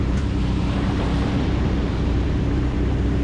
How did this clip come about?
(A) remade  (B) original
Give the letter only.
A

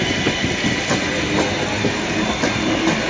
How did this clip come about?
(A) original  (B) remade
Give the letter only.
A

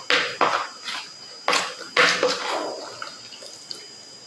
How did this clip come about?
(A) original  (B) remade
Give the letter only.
A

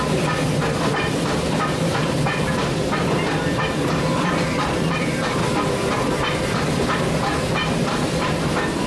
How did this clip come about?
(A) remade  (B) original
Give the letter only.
A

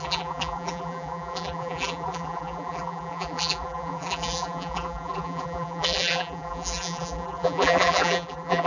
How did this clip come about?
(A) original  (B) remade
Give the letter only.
B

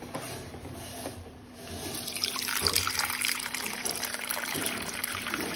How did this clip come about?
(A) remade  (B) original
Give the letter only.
A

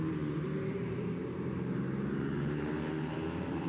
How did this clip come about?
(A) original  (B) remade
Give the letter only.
B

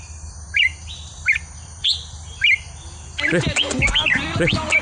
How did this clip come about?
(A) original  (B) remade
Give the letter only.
B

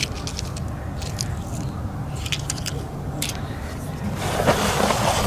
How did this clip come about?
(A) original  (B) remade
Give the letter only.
A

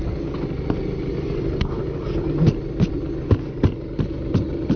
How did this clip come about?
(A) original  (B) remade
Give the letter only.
A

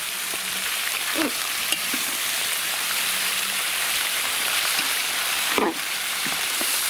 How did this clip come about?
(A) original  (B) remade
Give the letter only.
B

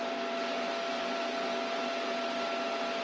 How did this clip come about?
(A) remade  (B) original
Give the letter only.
B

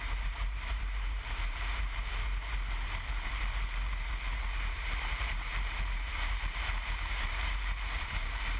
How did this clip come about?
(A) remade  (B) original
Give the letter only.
A